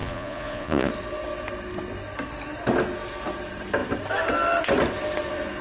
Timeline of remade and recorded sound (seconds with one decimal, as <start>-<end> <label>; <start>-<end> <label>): 0.0-0.9 remade; 0.9-5.6 recorded